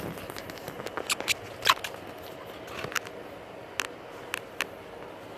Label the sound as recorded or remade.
recorded